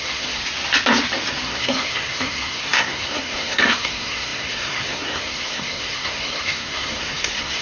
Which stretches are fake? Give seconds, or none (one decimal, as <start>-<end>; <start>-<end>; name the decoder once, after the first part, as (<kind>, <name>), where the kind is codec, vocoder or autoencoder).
0.0-0.4 (codec, SNAC); 1.3-7.6